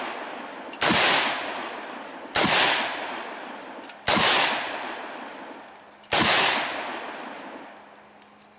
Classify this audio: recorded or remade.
recorded